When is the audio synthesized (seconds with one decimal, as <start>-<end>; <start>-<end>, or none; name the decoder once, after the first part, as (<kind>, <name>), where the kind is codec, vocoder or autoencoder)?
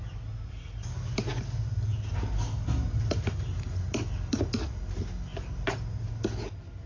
none